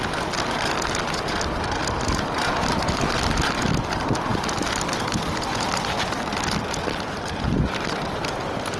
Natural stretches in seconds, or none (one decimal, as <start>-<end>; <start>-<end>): 0.0-8.8